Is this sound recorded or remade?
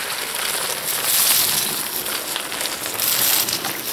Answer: recorded